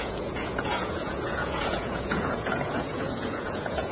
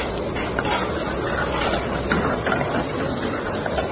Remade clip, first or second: first